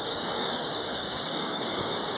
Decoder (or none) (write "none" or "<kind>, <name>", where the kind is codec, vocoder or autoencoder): codec, DAC